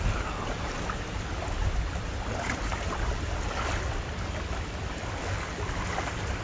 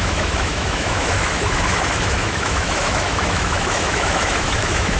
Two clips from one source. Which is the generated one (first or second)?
second